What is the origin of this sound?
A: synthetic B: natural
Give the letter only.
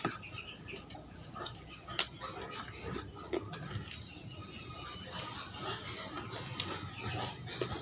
B